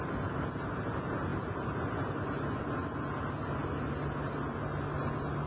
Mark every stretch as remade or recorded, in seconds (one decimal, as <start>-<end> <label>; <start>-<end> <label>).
0.0-5.5 recorded